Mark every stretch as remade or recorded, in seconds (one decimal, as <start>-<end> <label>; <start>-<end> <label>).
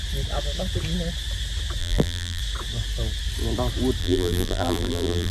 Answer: 0.0-1.8 recorded; 1.8-2.4 remade; 2.4-4.0 recorded; 4.0-5.3 remade